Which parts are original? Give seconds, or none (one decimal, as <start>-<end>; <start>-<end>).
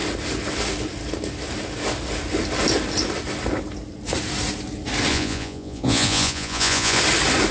0.0-5.1; 7.0-7.5